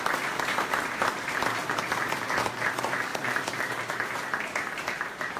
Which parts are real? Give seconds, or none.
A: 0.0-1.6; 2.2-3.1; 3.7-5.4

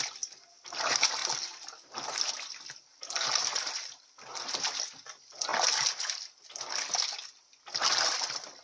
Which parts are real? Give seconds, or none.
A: 0.0-8.6

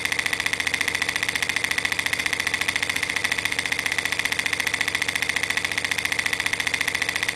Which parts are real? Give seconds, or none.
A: 0.0-7.4